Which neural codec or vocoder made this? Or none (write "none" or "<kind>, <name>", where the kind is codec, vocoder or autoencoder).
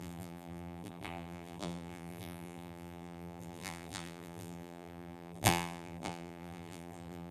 vocoder, BigVGAN v2